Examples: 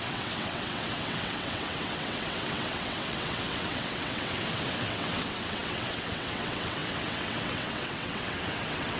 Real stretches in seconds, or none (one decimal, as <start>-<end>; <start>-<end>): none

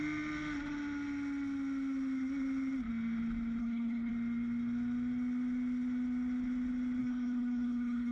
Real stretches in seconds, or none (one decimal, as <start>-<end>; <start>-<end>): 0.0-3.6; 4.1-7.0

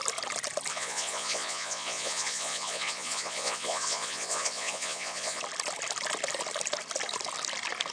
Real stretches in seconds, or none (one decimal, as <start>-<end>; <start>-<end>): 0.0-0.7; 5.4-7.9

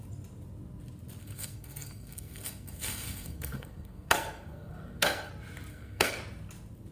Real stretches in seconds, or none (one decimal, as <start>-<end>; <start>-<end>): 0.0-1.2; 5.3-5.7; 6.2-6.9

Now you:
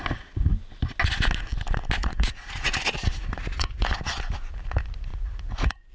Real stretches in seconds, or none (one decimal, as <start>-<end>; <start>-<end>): 0.0-2.0; 3.9-5.1